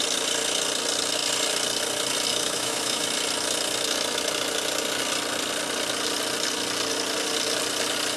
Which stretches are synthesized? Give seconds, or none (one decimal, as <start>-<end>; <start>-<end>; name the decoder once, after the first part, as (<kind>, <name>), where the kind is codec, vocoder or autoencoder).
2.3-3.0 (autoencoder, DAC-VAE)

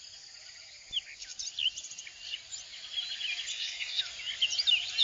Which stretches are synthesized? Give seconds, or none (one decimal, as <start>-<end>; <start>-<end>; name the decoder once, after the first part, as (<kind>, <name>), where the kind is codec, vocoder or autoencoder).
3.5-4.0 (codec, SNAC)

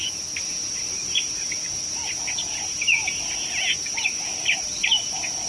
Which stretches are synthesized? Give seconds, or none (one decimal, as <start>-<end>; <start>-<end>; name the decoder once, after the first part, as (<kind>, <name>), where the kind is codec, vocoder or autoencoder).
none

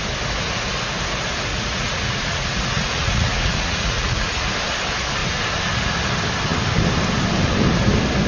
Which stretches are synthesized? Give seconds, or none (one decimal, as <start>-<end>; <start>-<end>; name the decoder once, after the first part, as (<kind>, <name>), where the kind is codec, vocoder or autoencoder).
1.5-4.5 (vocoder, Vocos)